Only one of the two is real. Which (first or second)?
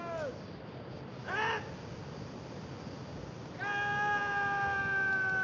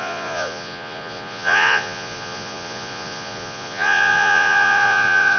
first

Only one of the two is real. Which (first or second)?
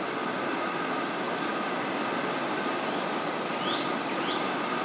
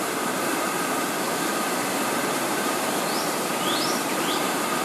first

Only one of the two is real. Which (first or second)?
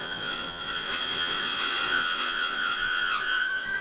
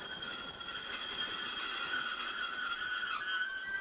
second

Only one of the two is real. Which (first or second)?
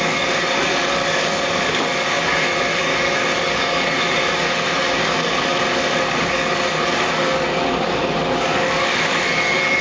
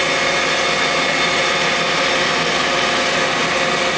second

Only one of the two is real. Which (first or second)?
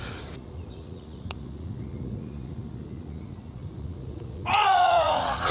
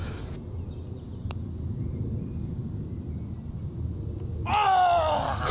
second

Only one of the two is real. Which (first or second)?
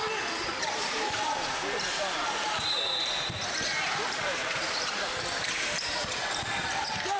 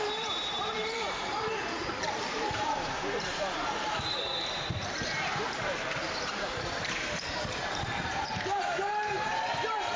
first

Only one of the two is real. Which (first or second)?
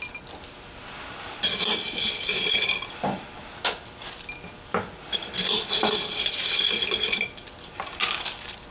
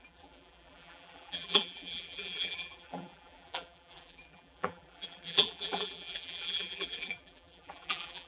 first